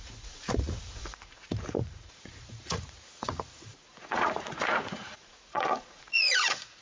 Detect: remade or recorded remade